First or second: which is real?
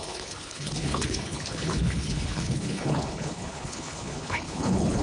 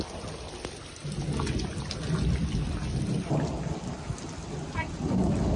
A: second